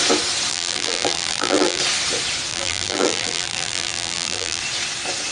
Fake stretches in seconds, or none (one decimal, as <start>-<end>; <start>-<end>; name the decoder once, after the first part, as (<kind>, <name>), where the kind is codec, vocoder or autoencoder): 0.5-1.8 (vocoder, BigVGAN v2); 2.5-4.6